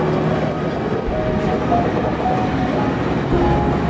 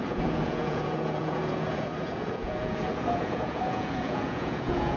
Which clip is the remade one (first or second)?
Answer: second